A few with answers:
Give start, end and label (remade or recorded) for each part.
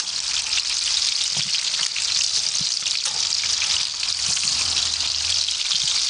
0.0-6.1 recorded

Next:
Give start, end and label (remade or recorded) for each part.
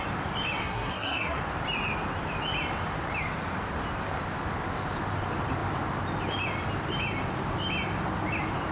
0.0-0.6 recorded; 0.6-1.4 remade; 1.4-8.7 recorded